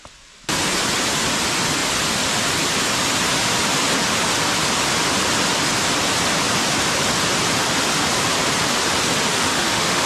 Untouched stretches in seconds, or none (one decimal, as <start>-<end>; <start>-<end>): 0.0-9.3